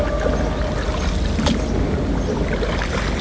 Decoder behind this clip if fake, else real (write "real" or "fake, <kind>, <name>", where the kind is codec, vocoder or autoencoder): real